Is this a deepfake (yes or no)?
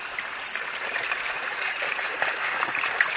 yes